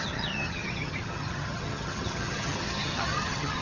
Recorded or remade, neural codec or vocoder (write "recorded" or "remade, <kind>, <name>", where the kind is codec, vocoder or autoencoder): remade, vocoder, HiFi-GAN